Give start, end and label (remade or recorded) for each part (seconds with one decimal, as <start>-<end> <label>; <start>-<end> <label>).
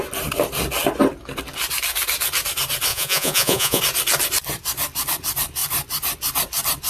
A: 0.0-2.9 recorded; 2.9-3.8 remade; 3.8-6.9 recorded